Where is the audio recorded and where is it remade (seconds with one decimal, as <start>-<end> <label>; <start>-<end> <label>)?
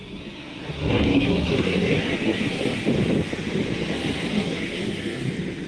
0.0-2.9 remade; 2.9-4.3 recorded; 4.3-5.3 remade; 5.3-5.7 recorded